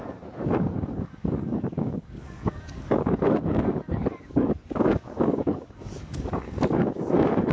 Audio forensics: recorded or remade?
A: remade